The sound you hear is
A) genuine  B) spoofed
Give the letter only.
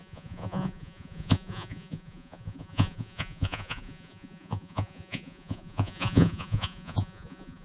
B